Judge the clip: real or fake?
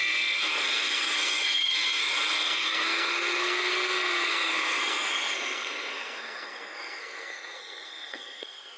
fake